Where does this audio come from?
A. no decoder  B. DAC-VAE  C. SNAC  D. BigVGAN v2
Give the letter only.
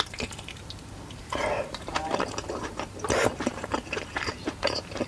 D